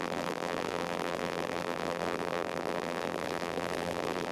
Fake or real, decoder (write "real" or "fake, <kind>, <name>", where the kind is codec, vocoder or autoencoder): fake, vocoder, BigVGAN v2